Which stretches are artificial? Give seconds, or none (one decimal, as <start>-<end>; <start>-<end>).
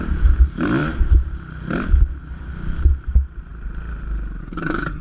4.4-5.0